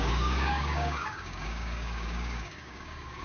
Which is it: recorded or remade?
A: remade